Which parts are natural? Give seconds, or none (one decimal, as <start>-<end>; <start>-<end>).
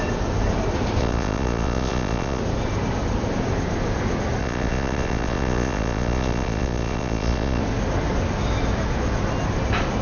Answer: 0.0-1.0; 2.4-4.4; 7.6-10.0